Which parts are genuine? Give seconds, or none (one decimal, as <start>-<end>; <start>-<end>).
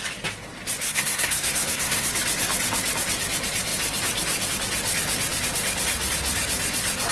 0.0-0.8; 2.1-7.1